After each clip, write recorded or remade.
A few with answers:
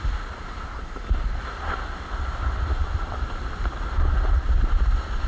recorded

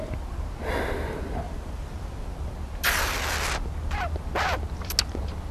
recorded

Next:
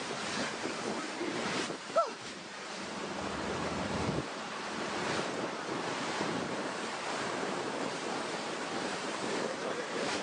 remade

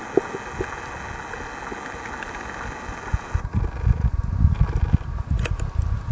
recorded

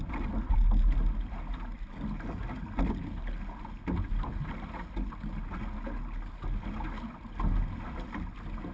recorded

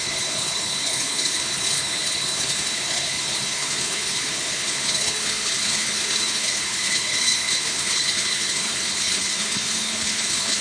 remade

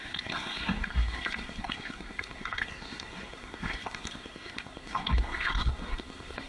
remade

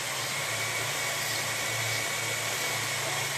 recorded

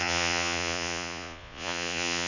remade